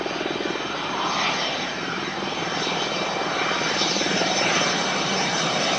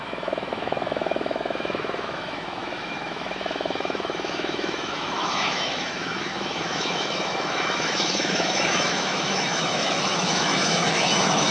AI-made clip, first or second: second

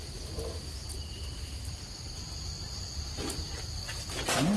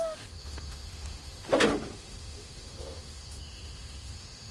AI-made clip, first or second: second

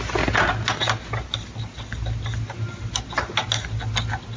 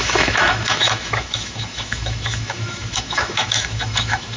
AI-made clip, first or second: second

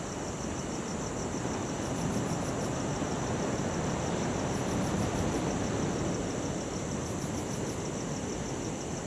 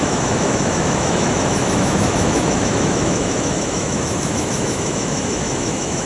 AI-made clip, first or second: second